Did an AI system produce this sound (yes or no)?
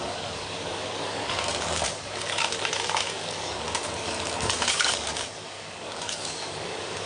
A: yes